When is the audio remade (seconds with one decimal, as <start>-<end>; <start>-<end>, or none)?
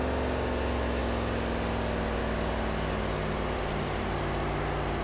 none